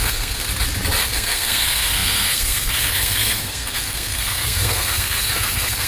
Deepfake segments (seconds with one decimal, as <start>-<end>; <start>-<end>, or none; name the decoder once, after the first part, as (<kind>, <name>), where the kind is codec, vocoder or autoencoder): 0.0-0.5 (codec, SNAC); 1.0-5.9